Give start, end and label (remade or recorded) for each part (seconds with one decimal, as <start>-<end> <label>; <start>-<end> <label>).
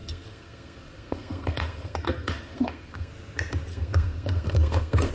0.0-3.1 remade; 3.1-3.7 recorded; 3.7-5.1 remade